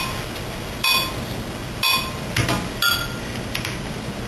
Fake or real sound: real